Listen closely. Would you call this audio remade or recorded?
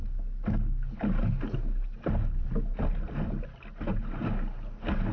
recorded